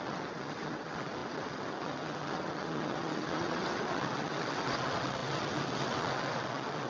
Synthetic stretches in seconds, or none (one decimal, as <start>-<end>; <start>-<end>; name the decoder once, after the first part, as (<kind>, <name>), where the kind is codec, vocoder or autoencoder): 0.0-6.9 (vocoder, WaveNeXt)